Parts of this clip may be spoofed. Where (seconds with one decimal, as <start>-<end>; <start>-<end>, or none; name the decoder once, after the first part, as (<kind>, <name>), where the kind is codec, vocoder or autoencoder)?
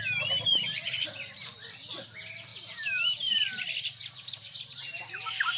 0.5-1.1 (vocoder, BigVGAN v2); 2.5-5.1